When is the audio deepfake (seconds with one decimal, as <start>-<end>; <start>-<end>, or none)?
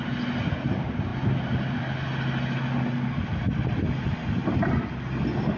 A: none